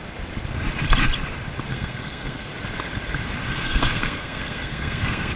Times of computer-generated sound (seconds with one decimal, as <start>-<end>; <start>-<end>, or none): 1.7-2.5; 3.5-5.4